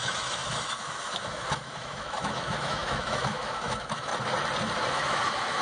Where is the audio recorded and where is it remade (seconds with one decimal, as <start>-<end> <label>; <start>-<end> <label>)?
0.0-4.1 remade; 4.1-4.9 recorded; 4.9-5.6 remade